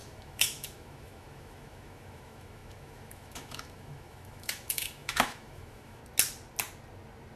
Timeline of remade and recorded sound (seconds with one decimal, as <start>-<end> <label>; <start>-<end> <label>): 0.0-6.0 remade; 6.0-7.4 recorded